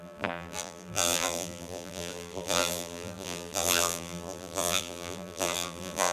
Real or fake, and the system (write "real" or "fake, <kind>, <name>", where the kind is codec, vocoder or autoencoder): fake, vocoder, BigVGAN v2